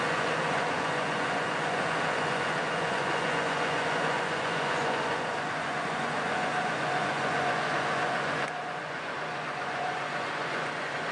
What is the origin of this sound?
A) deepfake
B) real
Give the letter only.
A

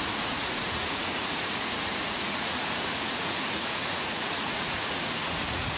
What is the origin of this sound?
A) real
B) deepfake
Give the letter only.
B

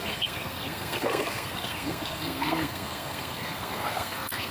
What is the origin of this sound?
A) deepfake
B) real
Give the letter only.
A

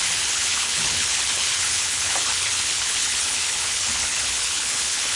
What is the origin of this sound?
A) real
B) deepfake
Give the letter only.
B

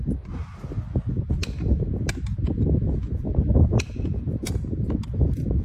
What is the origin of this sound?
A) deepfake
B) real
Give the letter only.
B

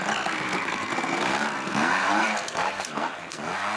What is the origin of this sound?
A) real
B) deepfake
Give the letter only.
B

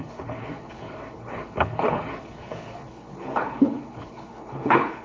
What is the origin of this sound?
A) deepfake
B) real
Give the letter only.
A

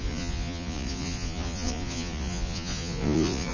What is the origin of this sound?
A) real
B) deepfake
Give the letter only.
B